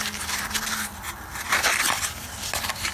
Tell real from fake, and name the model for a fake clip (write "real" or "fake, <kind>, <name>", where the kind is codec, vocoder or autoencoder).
real